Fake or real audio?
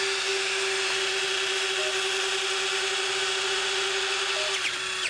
real